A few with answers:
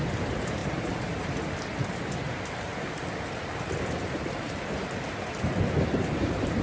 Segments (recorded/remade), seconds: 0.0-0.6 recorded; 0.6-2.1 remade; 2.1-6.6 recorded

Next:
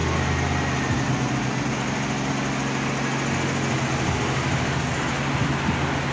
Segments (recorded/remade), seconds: 0.0-6.1 recorded

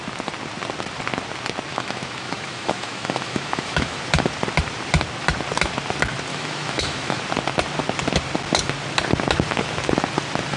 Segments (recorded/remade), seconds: 0.0-1.7 recorded; 1.7-4.0 remade; 4.0-6.3 recorded; 6.3-7.2 remade; 7.2-10.6 recorded

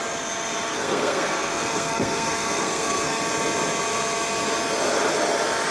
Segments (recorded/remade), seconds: 0.0-0.7 recorded; 0.7-3.2 remade; 3.2-5.7 recorded

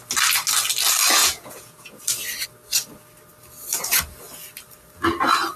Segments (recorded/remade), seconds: 0.0-1.2 recorded; 1.2-2.0 remade; 2.0-5.6 recorded

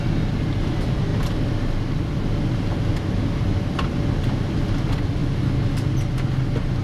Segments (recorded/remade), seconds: 0.0-6.8 recorded

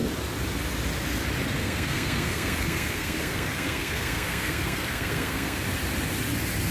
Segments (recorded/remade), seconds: 0.0-1.6 recorded; 1.6-5.6 remade; 5.6-6.7 recorded

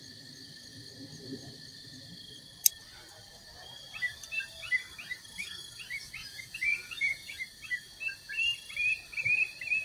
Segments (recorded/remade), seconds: 0.0-6.2 recorded; 6.2-7.4 remade; 7.4-9.8 recorded